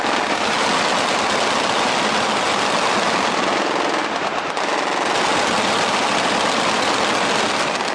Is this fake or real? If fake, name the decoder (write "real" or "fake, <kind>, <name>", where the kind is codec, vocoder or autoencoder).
real